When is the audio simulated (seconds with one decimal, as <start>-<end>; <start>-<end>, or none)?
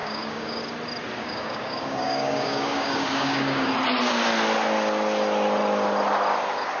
0.0-0.6; 1.2-3.7